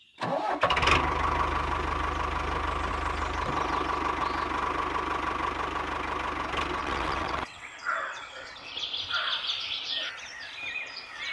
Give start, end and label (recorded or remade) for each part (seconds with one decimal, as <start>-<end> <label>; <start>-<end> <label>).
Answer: 0.0-6.8 recorded; 6.8-8.7 remade; 8.7-11.3 recorded